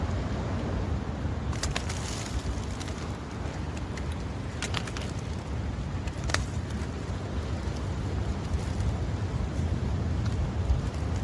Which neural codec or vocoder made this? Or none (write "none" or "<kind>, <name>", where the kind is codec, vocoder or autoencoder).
none